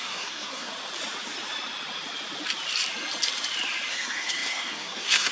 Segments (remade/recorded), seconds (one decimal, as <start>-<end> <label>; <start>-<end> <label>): 0.0-0.7 remade; 0.7-3.9 recorded; 3.9-5.3 remade